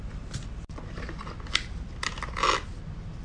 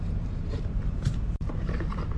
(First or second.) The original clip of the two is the first